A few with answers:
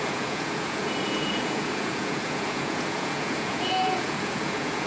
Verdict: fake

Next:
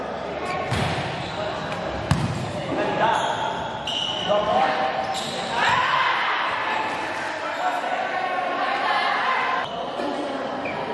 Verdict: fake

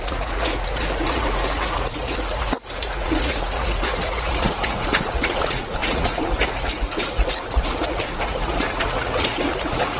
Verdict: fake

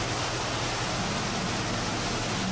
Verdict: real